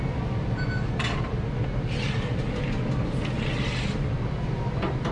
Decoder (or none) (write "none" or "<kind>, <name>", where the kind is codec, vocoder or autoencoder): none